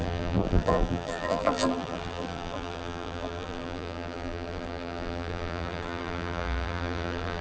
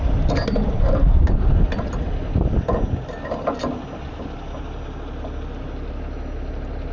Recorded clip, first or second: second